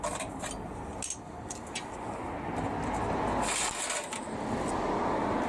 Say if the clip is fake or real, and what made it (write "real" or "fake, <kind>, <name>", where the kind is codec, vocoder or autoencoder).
real